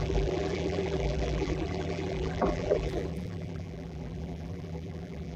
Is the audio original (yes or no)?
no